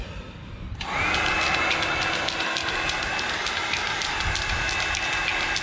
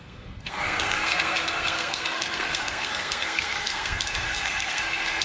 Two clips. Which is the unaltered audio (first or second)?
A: first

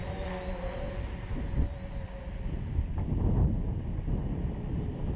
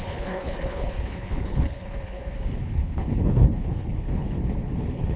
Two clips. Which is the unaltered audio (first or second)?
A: first